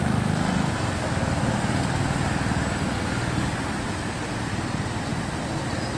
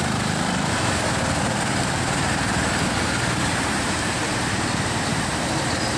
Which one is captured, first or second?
first